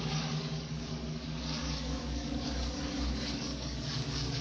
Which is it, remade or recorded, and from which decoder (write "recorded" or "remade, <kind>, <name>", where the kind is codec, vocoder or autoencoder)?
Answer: remade, codec, DAC